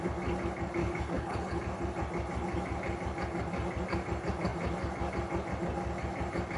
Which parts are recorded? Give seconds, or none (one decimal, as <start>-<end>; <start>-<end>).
0.0-0.8; 1.6-6.6